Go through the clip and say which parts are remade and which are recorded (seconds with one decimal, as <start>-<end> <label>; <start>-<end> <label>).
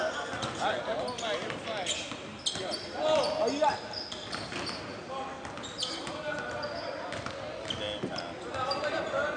0.0-9.4 recorded